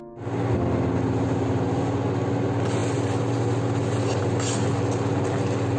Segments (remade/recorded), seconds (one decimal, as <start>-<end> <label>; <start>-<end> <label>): 0.0-5.8 recorded